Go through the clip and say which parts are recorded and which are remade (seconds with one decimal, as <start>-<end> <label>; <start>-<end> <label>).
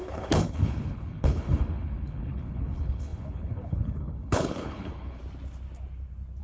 0.0-5.2 remade; 5.2-6.4 recorded